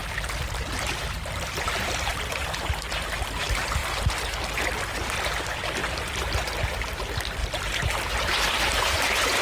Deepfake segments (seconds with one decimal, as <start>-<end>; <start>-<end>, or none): 0.0-2.1; 5.8-6.4; 7.4-8.0